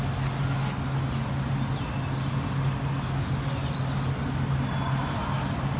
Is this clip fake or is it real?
real